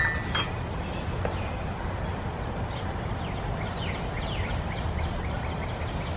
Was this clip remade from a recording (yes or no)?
no